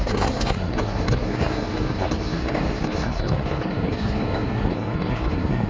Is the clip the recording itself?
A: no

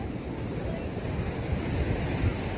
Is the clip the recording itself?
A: yes